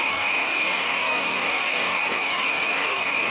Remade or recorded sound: remade